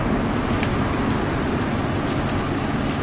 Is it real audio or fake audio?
real